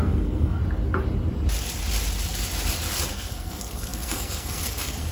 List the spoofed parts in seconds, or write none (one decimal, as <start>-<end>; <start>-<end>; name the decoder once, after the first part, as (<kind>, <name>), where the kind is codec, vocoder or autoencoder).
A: 0.0-0.6 (codec, SNAC); 3.1-5.1